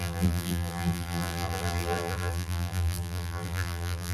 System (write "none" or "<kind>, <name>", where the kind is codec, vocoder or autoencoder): vocoder, BigVGAN v2